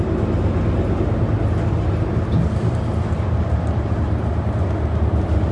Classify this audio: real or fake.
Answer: real